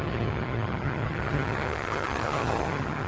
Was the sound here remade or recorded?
remade